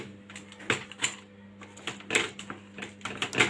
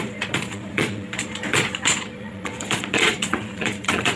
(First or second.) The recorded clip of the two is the first